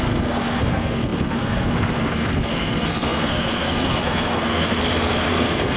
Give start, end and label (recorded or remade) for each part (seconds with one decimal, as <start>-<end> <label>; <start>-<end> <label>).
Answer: 0.0-4.8 remade; 4.8-5.3 recorded; 5.3-5.8 remade